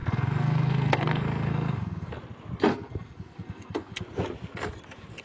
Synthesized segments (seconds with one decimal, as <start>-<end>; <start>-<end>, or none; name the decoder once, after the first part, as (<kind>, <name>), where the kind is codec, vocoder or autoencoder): 0.0-2.1 (codec, SNAC); 2.7-4.0